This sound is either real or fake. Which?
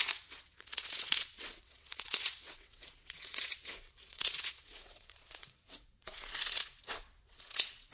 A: fake